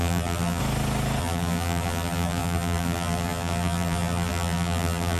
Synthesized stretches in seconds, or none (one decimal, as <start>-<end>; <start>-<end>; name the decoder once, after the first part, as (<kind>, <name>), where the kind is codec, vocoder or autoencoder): 0.0-0.6 (vocoder, BigVGAN v2); 1.2-5.2